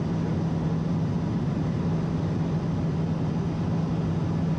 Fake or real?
real